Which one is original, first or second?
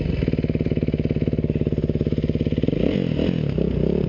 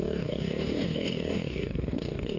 first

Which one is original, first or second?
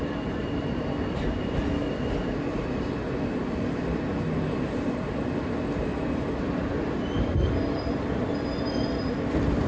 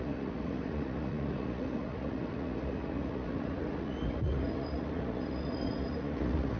first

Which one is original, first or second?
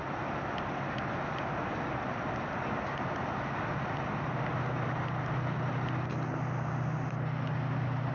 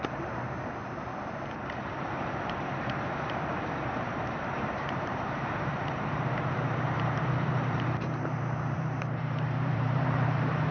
first